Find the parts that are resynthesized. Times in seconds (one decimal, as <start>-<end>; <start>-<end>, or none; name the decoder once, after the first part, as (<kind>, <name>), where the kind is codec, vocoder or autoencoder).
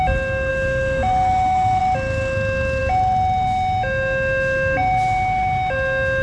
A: 0.5-1.8 (autoencoder, DAC-VAE)